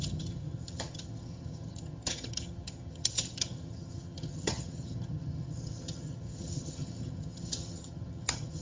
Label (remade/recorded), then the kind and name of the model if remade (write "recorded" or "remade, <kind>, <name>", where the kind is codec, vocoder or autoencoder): remade, vocoder, HiFi-GAN